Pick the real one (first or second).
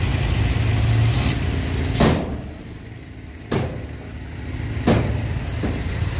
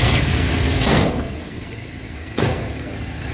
first